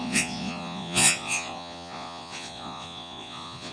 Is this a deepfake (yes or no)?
yes